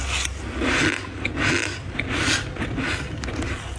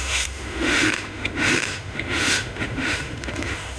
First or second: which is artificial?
second